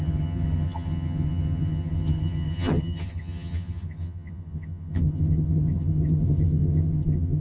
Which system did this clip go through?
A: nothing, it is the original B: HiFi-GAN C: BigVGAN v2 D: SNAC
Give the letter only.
B